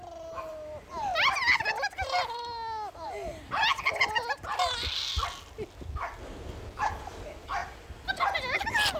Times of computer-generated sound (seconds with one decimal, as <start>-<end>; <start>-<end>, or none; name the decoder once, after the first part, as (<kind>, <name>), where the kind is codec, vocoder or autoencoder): none